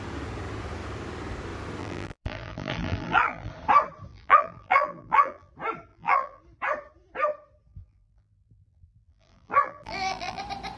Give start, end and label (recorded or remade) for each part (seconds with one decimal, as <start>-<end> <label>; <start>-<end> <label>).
0.0-1.8 recorded; 1.8-3.5 remade; 3.5-4.1 recorded; 4.1-5.5 remade; 5.5-5.9 recorded; 5.9-6.4 remade; 6.4-7.7 recorded; 7.7-10.4 remade; 10.4-10.8 recorded

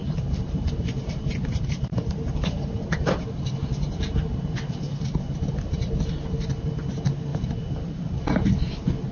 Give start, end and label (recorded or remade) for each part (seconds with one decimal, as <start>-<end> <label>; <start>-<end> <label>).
0.0-3.0 remade; 3.0-7.3 recorded; 7.3-8.2 remade; 8.2-9.1 recorded

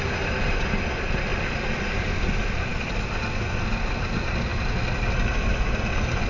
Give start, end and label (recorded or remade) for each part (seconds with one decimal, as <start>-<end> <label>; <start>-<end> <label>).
0.0-6.3 recorded

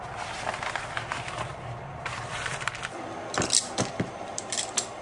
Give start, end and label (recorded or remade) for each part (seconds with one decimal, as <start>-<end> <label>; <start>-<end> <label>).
0.0-1.5 recorded; 1.5-4.5 remade; 4.5-5.0 recorded

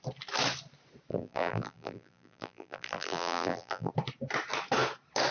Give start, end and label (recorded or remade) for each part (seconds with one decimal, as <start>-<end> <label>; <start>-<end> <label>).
0.0-1.1 recorded; 1.1-3.9 remade; 3.9-5.3 recorded

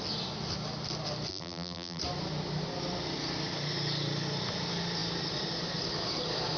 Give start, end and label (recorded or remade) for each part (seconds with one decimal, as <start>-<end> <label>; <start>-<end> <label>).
0.0-1.3 recorded; 1.3-2.0 remade; 2.0-6.6 recorded